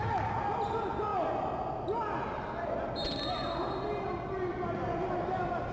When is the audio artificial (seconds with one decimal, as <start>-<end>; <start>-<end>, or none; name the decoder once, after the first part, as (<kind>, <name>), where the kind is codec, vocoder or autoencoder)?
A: none